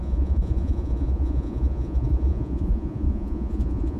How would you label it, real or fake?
fake